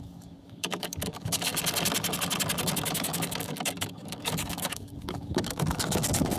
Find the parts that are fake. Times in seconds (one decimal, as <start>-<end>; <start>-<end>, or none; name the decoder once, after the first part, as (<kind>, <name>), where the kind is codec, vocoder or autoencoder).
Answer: 0.0-1.5 (codec, DAC); 2.9-6.4